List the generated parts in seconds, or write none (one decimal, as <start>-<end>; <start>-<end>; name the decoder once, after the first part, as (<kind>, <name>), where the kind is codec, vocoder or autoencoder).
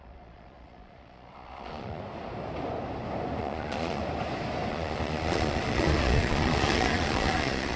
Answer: 0.0-2.0 (vocoder, Vocos); 3.4-4.0; 4.7-7.8